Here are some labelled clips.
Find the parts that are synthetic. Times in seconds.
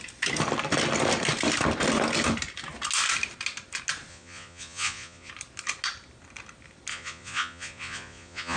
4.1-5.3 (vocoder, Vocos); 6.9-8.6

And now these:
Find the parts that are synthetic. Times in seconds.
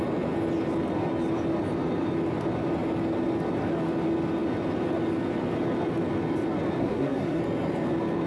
6.8-7.4 (codec, SNAC)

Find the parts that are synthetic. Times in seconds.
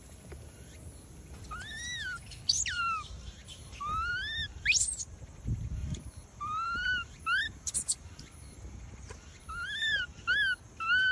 1.7-2.8 (vocoder, BigVGAN v2); 3.4-4.1; 5.8-10.0